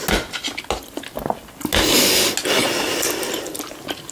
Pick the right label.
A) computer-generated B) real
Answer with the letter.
B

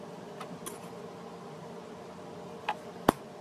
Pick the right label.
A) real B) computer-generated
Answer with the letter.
A